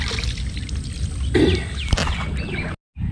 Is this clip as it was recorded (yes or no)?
yes